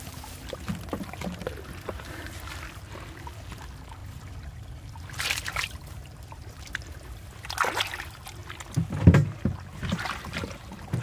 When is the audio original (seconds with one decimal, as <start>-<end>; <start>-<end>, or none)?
0.0-4.0; 6.5-11.0